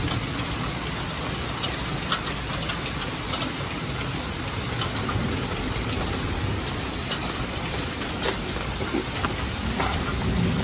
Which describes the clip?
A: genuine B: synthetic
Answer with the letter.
A